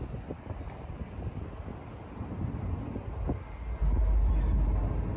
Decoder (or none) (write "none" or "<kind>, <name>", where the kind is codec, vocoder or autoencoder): none